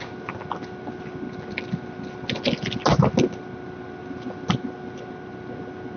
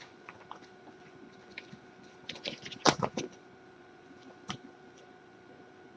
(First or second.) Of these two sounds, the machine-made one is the second